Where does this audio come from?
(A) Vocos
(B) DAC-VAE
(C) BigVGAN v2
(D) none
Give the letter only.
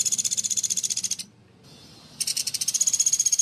D